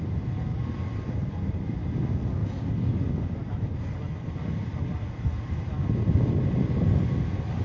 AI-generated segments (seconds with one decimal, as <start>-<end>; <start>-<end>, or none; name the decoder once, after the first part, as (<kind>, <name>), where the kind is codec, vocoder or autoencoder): none